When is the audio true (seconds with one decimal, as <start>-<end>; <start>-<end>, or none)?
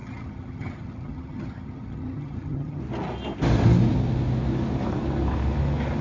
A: 2.8-6.0